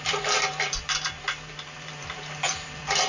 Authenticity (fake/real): fake